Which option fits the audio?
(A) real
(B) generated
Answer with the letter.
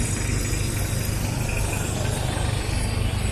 A